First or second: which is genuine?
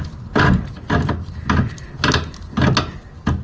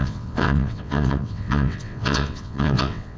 first